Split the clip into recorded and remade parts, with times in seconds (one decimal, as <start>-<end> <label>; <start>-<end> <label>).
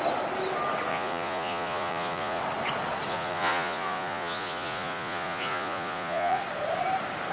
0.0-0.9 recorded; 0.9-2.4 remade; 2.4-3.1 recorded; 3.1-6.4 remade; 6.4-7.3 recorded